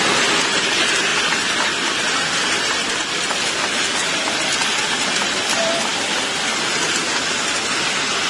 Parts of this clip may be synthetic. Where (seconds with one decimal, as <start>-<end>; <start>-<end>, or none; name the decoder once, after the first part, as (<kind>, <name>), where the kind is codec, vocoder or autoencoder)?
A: 1.1-5.1 (vocoder, BigVGAN v2)